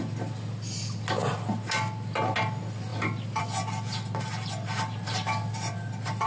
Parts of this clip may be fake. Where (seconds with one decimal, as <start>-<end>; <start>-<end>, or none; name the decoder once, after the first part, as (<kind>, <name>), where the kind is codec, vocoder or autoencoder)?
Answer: none